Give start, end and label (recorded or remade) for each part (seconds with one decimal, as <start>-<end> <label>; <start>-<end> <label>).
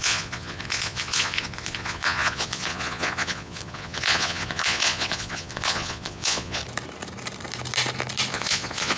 0.0-6.6 remade; 6.6-8.3 recorded; 8.3-9.0 remade